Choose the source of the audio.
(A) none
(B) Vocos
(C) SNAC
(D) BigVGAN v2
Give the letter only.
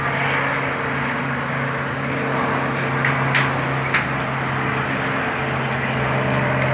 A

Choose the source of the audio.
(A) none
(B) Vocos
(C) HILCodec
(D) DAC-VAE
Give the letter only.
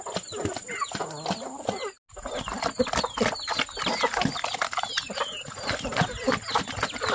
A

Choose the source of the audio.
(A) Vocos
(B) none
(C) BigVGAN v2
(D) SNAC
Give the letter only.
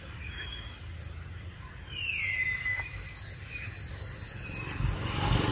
B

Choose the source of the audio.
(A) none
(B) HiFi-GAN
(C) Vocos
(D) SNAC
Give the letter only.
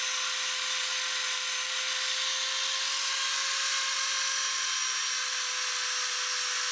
A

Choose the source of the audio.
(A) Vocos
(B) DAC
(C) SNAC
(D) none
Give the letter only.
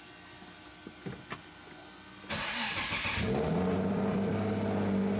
D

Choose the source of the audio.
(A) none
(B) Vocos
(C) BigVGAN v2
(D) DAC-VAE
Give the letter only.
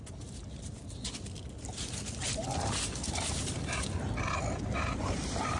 A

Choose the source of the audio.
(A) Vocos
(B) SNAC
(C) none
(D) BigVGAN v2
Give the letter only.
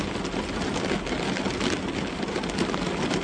C